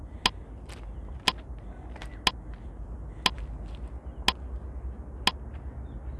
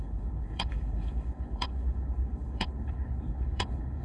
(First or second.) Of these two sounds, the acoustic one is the first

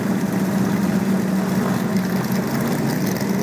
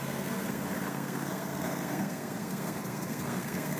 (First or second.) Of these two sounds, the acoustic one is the first